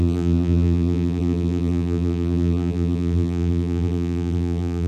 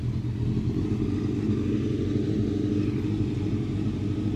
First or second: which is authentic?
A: second